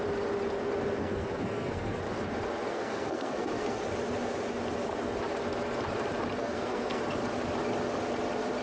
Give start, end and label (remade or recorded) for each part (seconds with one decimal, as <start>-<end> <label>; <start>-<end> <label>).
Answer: 0.0-1.0 recorded; 1.0-2.0 remade; 2.0-2.7 recorded; 2.7-3.8 remade; 3.8-6.4 recorded; 6.4-7.0 remade; 7.0-8.6 recorded